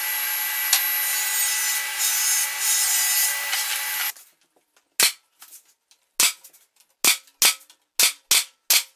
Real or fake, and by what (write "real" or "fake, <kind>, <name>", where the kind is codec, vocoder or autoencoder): real